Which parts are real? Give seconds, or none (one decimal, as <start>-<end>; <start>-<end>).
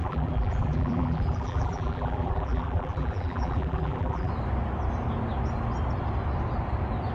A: 4.3-7.1